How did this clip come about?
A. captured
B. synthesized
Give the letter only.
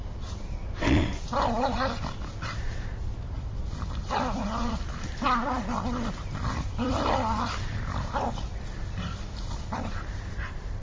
B